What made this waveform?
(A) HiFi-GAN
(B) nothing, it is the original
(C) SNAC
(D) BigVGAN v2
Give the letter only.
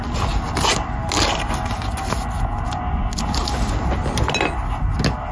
B